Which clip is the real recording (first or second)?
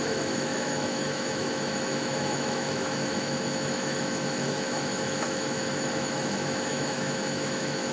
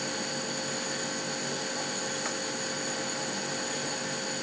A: second